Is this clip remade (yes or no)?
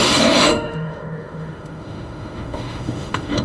yes